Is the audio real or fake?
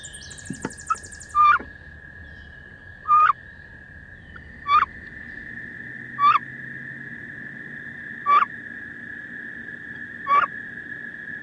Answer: real